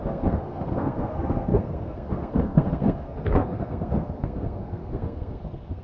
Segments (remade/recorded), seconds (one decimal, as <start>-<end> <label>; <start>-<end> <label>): 0.0-5.8 remade